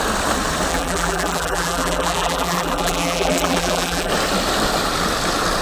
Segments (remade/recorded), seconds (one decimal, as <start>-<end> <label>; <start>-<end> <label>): 0.0-0.7 recorded; 0.7-4.1 remade; 4.1-5.6 recorded